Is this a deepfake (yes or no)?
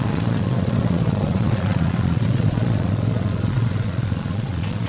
yes